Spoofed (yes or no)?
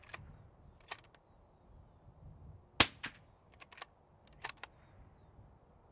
no